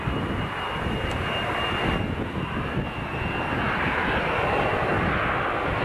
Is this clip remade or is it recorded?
recorded